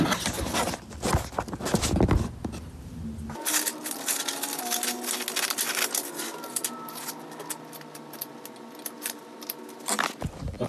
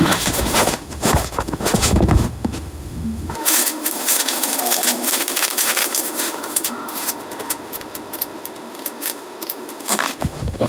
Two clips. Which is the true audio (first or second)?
first